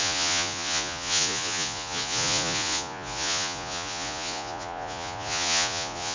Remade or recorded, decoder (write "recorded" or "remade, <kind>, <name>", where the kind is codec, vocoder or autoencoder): remade, vocoder, Vocos